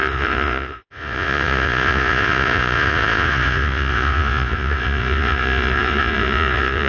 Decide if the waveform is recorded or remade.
remade